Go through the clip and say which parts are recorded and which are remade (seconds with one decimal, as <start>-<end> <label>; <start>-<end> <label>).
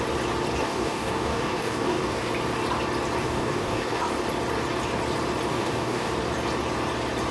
0.0-0.6 recorded; 0.6-2.3 remade; 2.3-3.2 recorded; 3.2-4.0 remade; 4.0-5.5 recorded; 5.5-6.1 remade; 6.1-7.3 recorded